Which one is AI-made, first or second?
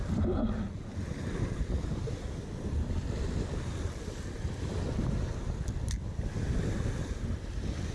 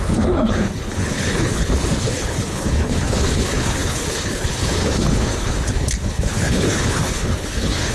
second